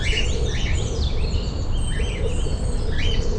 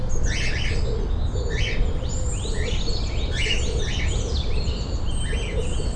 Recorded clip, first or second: second